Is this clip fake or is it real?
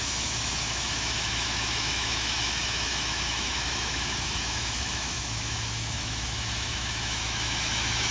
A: fake